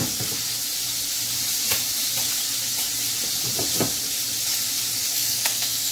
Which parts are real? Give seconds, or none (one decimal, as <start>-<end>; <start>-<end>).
0.0-5.1